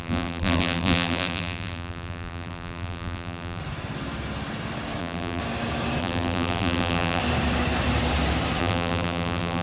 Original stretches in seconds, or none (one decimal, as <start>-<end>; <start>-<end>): 3.6-5.0; 5.4-6.0; 7.2-8.6